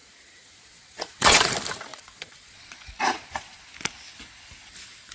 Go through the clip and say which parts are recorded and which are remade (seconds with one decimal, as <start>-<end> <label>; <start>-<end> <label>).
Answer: 0.0-1.5 remade; 1.5-1.9 recorded; 1.9-3.6 remade; 3.6-5.1 recorded

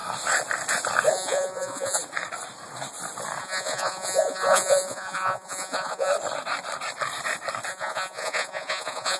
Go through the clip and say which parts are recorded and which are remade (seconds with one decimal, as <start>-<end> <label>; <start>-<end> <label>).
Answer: 0.0-1.1 recorded; 1.1-2.0 remade; 2.0-3.4 recorded; 3.4-6.1 remade; 6.1-7.7 recorded; 7.7-9.2 remade

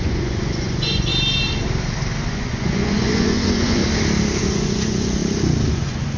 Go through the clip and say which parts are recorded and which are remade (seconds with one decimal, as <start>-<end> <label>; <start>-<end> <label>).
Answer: 0.0-1.1 remade; 1.1-2.3 recorded; 2.3-3.8 remade; 3.8-4.4 recorded; 4.4-5.2 remade; 5.2-5.7 recorded; 5.7-6.2 remade

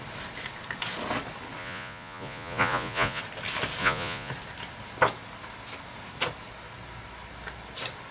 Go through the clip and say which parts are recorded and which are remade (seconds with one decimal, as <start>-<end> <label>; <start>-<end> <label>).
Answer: 0.0-1.6 recorded; 1.6-3.2 remade; 3.2-3.8 recorded; 3.8-4.3 remade; 4.3-8.1 recorded

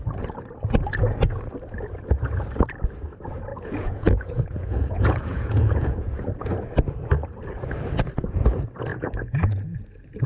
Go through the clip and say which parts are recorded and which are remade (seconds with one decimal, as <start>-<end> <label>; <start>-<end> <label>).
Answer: 0.0-3.5 recorded; 3.5-6.2 remade; 6.2-8.9 recorded; 8.9-9.8 remade; 9.8-10.3 recorded

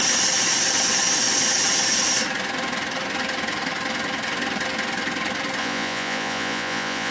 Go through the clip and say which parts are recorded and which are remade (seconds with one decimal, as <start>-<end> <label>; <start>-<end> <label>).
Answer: 0.0-5.6 recorded; 5.6-7.1 remade